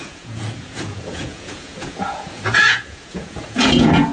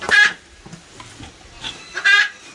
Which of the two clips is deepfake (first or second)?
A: first